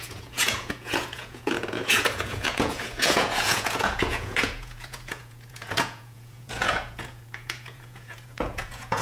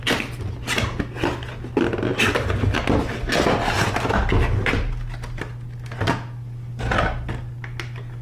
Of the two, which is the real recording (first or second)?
second